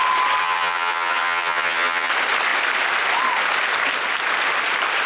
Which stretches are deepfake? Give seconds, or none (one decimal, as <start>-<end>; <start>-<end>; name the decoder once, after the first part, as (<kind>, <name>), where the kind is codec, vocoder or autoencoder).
0.4-2.1 (vocoder, HiFi-GAN)